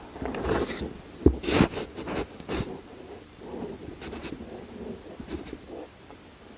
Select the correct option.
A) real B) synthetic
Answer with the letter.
B